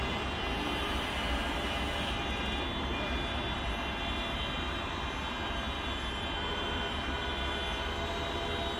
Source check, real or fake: real